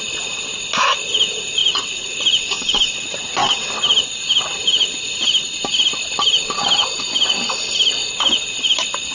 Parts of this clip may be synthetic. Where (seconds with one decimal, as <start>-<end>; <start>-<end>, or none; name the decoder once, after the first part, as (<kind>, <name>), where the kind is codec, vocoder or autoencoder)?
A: 1.6-2.1 (vocoder, Vocos)